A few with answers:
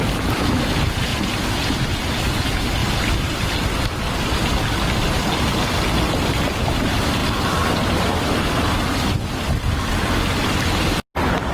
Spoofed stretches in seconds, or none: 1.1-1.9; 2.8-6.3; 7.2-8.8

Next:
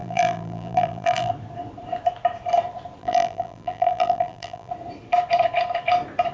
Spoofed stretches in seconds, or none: 0.0-1.3; 3.0-4.7